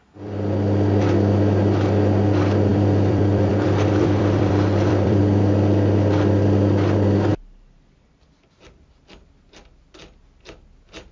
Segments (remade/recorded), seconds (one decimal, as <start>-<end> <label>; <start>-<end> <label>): 0.0-2.7 recorded; 2.7-5.2 remade; 5.2-11.1 recorded